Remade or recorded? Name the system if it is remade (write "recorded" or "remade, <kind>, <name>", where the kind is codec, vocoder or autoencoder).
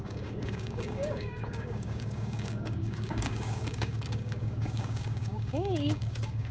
remade, codec, DAC